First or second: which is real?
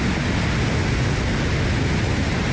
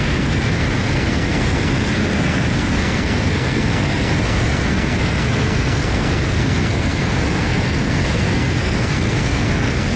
first